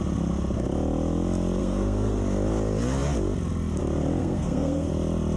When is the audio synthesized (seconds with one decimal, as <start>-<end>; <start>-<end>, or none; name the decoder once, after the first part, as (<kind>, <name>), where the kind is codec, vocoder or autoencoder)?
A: 1.6-2.2 (codec, SNAC); 4.2-4.9